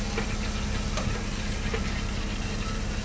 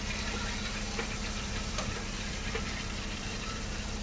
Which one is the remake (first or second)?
second